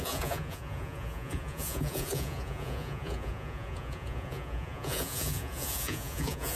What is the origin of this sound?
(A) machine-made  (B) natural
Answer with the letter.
A